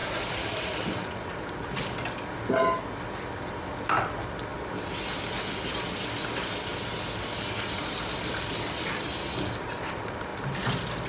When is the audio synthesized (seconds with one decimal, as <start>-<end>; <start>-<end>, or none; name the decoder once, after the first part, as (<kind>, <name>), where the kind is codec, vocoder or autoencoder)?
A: none